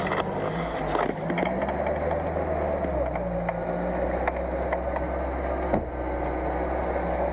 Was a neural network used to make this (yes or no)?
no